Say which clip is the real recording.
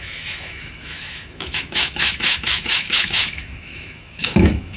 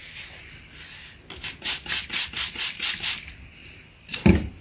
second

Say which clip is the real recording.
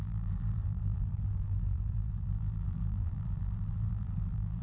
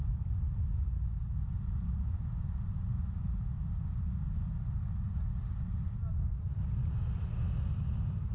second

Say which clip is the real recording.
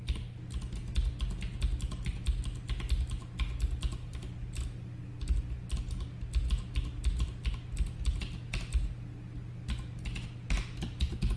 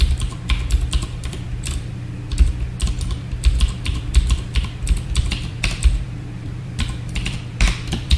first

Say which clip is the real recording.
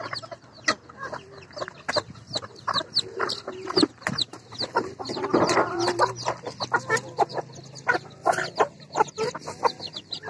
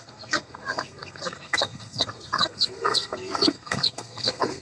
first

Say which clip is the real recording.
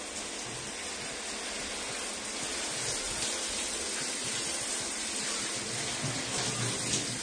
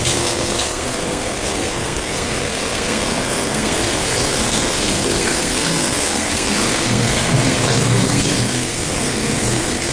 first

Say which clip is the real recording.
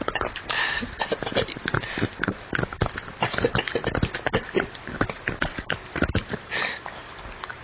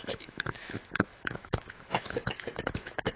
first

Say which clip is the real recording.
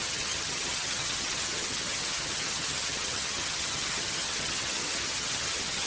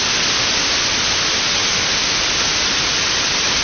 second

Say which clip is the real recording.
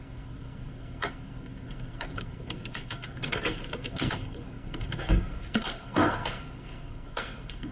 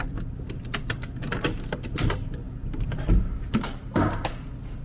second